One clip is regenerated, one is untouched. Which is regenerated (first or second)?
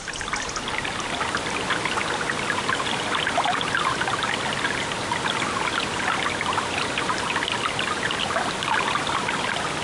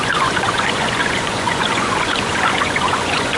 second